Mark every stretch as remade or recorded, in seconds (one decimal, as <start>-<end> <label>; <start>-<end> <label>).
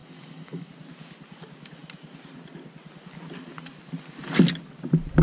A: 0.0-0.7 remade; 0.7-5.2 recorded